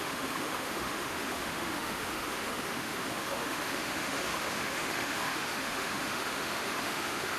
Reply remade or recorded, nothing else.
remade